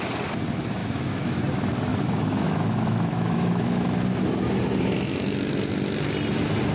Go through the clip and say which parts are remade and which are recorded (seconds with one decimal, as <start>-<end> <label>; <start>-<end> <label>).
0.0-0.8 recorded; 0.8-1.4 remade; 1.4-1.9 recorded; 1.9-4.0 remade; 4.0-6.7 recorded